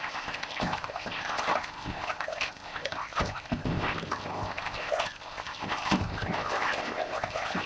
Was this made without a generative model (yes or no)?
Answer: no